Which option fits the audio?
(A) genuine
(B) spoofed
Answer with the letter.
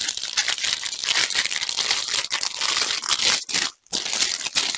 B